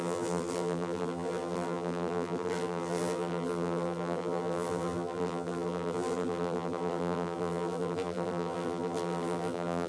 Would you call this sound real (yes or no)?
no